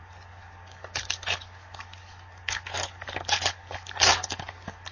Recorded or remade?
remade